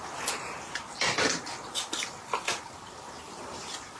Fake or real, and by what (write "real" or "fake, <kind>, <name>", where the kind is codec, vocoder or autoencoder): real